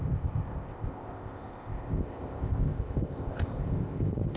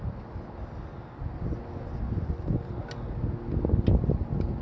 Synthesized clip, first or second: first